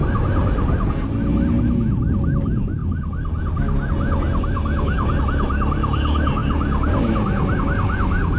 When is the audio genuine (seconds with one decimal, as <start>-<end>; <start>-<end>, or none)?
0.0-8.4